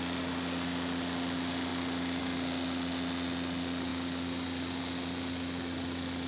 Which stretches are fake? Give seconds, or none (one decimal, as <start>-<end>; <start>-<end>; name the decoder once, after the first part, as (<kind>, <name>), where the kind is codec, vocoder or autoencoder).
none